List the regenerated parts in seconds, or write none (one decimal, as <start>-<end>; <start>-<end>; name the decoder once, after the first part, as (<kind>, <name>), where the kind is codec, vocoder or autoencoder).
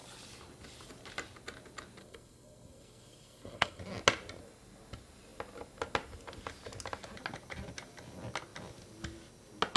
2.0-3.8 (codec, SNAC)